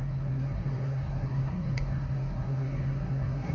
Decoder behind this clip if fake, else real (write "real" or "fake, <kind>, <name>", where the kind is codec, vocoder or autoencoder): fake, codec, SNAC